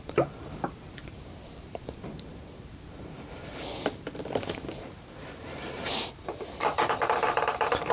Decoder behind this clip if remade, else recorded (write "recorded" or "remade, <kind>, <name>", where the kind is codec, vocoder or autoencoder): remade, vocoder, BigVGAN v2